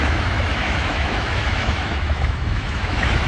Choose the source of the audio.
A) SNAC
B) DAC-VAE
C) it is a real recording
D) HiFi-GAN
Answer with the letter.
B